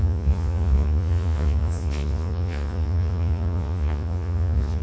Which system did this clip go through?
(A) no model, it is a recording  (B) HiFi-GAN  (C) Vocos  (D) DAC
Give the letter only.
C